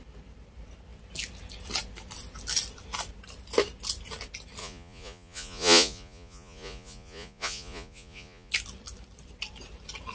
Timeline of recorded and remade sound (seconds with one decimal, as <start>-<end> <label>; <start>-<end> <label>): 0.0-4.6 recorded; 4.6-8.5 remade; 8.5-10.1 recorded